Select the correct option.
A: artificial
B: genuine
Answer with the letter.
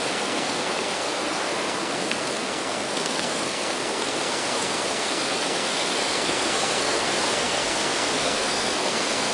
A